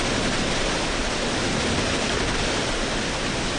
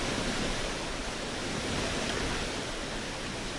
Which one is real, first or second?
first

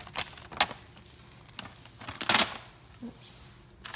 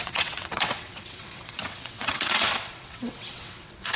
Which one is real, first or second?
first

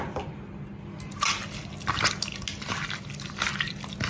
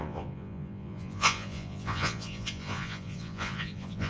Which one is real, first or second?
first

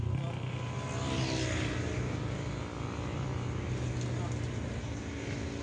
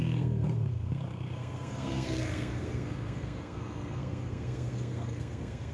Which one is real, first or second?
first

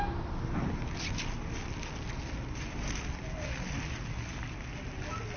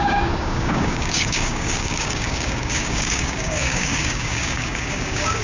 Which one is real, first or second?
first